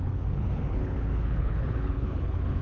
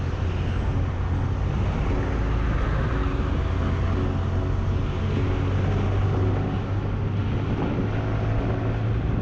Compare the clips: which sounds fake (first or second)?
first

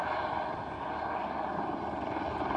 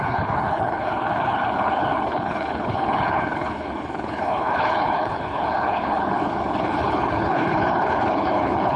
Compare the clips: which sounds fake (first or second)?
second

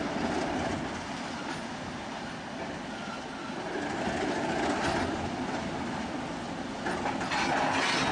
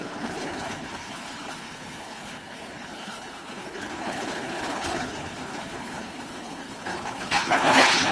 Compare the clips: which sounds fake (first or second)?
second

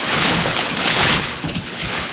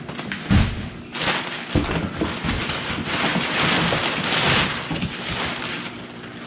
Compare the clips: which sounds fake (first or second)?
first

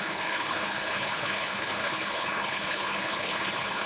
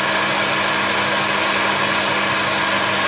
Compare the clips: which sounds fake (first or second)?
first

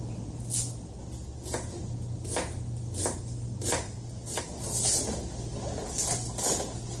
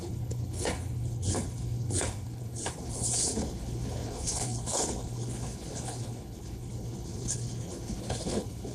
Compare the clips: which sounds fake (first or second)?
second